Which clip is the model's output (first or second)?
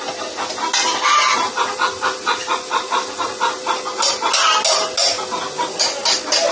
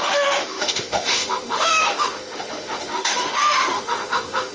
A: second